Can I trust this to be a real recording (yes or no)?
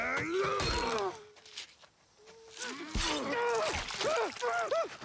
yes